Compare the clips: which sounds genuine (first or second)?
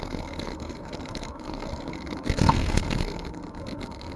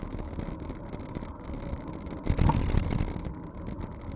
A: second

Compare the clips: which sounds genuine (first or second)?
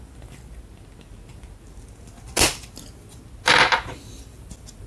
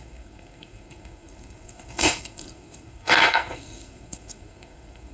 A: first